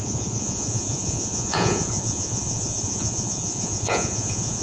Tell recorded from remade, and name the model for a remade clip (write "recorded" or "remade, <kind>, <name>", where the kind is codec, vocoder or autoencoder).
remade, vocoder, Vocos